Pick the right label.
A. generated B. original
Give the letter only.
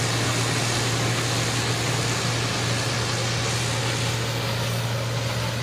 B